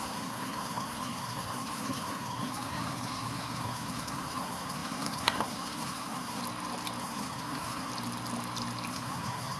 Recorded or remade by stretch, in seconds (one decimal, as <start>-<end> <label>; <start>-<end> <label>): 0.0-6.4 remade; 6.4-7.0 recorded; 7.0-7.9 remade; 7.9-8.9 recorded; 8.9-9.6 remade